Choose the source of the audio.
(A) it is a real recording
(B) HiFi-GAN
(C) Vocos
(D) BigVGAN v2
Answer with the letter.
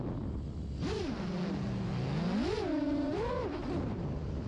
A